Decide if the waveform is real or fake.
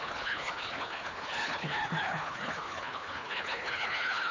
fake